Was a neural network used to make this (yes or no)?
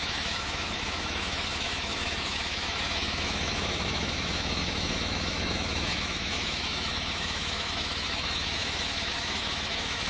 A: yes